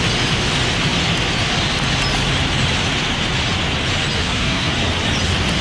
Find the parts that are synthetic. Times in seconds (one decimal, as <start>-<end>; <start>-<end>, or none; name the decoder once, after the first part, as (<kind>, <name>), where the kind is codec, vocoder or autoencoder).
4.2-4.7 (codec, SNAC)